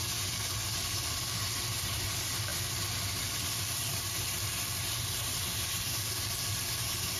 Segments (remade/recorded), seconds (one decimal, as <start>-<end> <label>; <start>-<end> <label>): 0.0-0.6 recorded; 0.6-1.1 remade; 1.1-2.5 recorded; 2.5-6.1 remade; 6.1-7.2 recorded